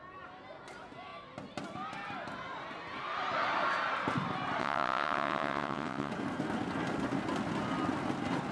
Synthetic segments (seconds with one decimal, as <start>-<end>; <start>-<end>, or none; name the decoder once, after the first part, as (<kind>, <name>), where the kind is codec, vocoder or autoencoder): 4.6-6.1 (vocoder, WaveNeXt)